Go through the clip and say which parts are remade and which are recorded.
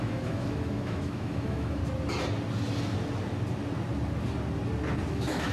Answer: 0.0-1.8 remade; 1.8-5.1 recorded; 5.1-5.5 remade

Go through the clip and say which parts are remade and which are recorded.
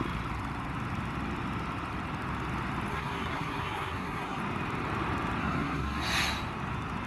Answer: 0.0-2.9 recorded; 2.9-4.4 remade; 4.4-5.4 recorded; 5.4-6.0 remade; 6.0-7.1 recorded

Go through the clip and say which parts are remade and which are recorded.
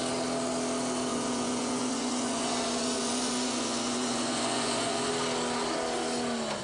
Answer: 0.0-1.1 recorded; 1.1-5.1 remade; 5.1-6.6 recorded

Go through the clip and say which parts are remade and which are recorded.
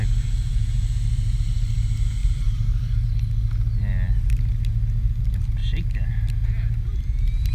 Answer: 0.0-0.5 recorded; 0.5-1.7 remade; 1.7-2.2 recorded; 2.2-3.1 remade; 3.1-7.5 recorded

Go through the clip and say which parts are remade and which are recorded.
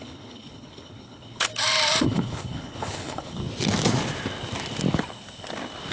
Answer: 0.0-1.5 remade; 1.5-2.0 recorded; 2.0-3.4 remade; 3.4-5.9 recorded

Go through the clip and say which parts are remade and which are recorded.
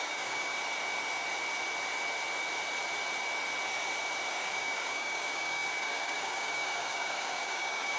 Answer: 0.0-0.5 remade; 0.5-4.3 recorded; 4.3-8.0 remade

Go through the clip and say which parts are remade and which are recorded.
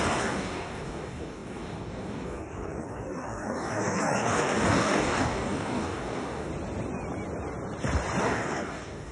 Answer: 0.0-6.5 remade; 6.5-8.2 recorded; 8.2-9.1 remade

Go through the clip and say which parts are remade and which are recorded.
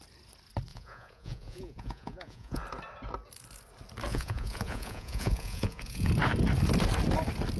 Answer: 0.0-0.7 recorded; 0.7-2.6 remade; 2.6-4.1 recorded; 4.1-6.1 remade; 6.1-7.6 recorded